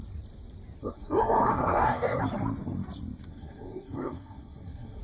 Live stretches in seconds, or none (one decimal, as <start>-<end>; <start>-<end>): 0.0-0.8; 2.2-3.3